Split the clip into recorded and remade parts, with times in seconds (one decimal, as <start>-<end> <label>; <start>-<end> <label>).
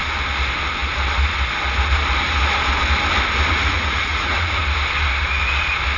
0.0-3.5 recorded; 3.5-4.6 remade; 4.6-6.0 recorded